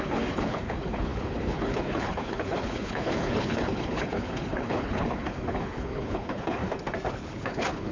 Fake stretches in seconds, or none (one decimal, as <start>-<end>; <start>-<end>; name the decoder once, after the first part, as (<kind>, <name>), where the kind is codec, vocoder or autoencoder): 0.0-6.6 (codec, HILCodec); 7.1-7.9